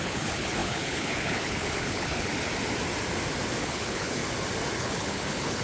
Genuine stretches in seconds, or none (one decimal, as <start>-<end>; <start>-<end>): 2.3-3.6; 4.2-4.8